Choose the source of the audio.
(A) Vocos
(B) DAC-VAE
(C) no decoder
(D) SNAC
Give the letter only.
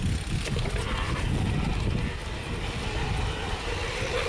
C